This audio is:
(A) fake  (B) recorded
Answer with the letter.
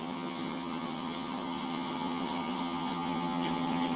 A